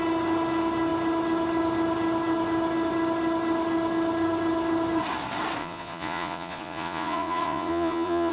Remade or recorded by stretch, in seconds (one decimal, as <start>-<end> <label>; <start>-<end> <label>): 0.0-5.6 recorded; 5.6-8.3 remade

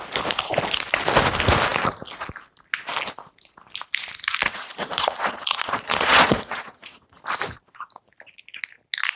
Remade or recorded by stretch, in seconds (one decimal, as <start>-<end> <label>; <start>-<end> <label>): 0.0-4.5 recorded; 4.5-7.2 remade; 7.2-9.2 recorded

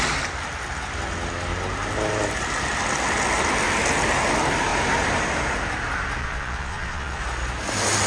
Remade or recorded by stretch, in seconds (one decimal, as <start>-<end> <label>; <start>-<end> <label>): 0.0-6.2 recorded; 6.2-7.2 remade; 7.2-8.1 recorded

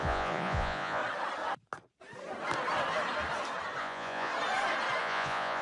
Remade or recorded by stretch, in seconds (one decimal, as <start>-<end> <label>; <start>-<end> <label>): 0.0-1.0 remade; 1.0-3.8 recorded; 3.8-4.3 remade; 4.3-5.0 recorded; 5.0-5.6 remade

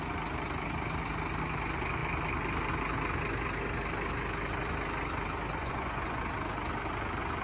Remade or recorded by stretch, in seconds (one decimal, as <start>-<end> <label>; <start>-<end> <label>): 0.0-5.6 recorded; 5.6-6.2 remade; 6.2-7.4 recorded

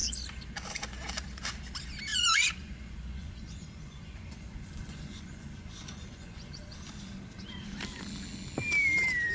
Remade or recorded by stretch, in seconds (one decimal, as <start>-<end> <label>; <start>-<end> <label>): 0.0-2.1 recorded; 2.1-6.5 remade; 6.5-9.3 recorded

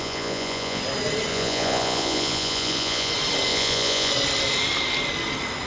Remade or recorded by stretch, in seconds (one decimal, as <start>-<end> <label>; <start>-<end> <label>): 0.0-0.8 remade; 0.8-1.3 recorded; 1.3-3.1 remade; 3.1-3.5 recorded; 3.5-4.1 remade; 4.1-5.7 recorded